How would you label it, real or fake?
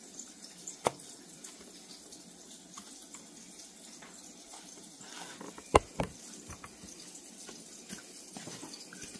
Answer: real